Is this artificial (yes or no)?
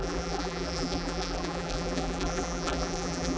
yes